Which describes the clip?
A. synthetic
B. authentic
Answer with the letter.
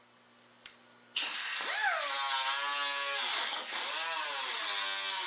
B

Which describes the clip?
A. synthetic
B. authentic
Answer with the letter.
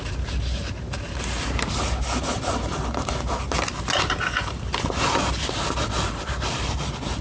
B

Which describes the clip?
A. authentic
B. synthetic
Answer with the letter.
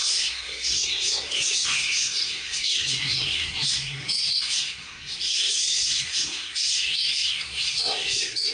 B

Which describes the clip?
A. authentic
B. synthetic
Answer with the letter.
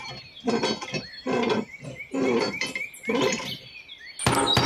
A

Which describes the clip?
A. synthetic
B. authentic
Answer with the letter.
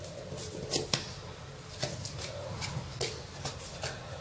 B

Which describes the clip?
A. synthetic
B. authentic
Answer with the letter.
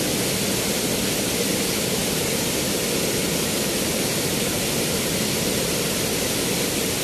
B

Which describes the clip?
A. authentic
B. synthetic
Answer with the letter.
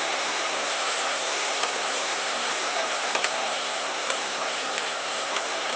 B